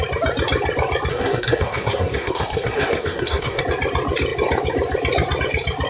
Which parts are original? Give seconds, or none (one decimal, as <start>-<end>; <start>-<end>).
0.0-1.1; 3.6-5.9